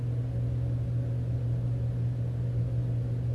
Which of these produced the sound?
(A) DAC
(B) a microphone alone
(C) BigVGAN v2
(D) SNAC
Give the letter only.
B